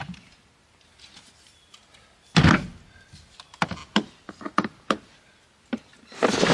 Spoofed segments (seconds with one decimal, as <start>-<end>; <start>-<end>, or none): none